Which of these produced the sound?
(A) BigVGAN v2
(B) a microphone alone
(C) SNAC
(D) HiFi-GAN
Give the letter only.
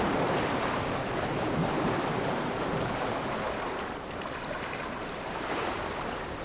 B